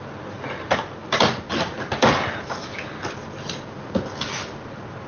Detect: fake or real real